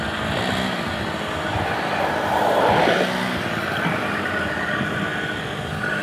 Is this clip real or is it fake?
real